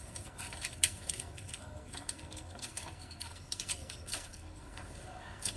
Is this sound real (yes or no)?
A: no